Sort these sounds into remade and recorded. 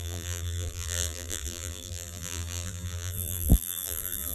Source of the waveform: remade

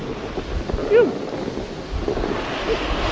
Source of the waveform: recorded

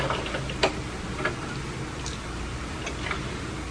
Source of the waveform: recorded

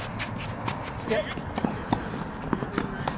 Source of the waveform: recorded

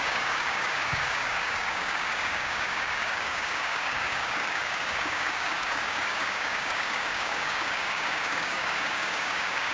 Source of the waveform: remade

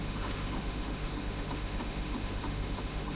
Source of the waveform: remade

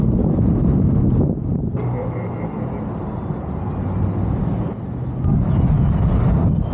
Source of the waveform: recorded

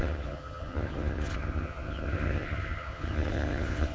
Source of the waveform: remade